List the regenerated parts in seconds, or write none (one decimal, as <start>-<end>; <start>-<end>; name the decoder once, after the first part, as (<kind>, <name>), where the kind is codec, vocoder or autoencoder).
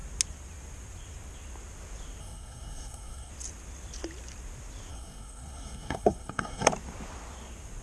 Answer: 2.2-3.3 (codec, SNAC); 4.9-6.7